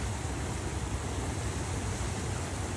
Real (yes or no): yes